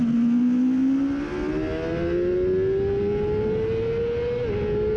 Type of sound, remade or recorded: recorded